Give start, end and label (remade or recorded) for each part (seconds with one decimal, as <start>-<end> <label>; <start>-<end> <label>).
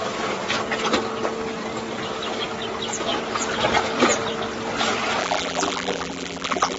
0.0-5.2 recorded; 5.2-6.8 remade